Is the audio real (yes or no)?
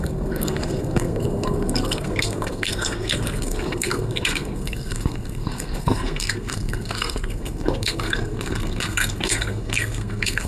no